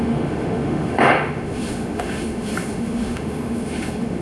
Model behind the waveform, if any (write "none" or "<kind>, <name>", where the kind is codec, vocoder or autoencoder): autoencoder, DAC-VAE